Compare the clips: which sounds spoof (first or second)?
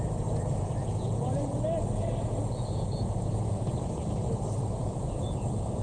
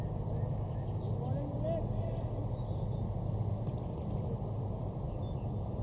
first